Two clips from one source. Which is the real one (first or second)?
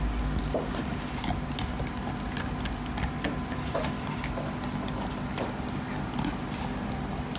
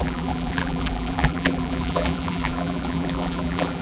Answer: first